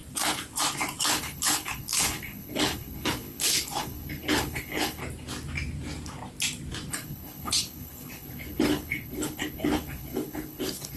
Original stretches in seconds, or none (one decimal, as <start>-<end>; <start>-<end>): 0.0-1.0; 5.0-6.9